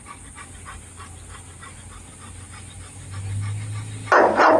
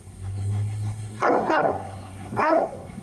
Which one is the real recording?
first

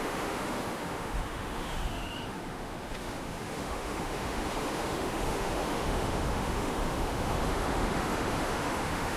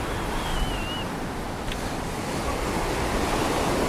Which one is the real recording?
second